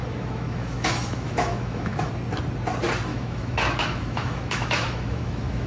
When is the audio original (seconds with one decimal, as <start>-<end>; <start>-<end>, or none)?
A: 2.1-3.1